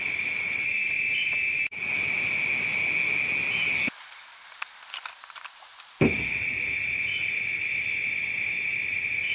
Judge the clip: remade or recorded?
recorded